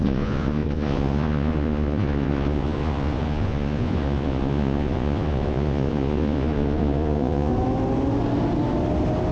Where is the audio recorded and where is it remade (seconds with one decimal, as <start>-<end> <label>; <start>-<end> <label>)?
0.0-7.5 remade; 7.5-9.3 recorded